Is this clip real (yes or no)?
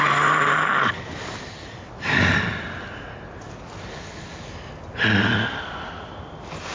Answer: yes